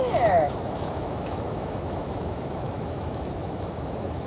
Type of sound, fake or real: fake